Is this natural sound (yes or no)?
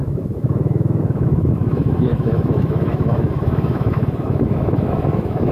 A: no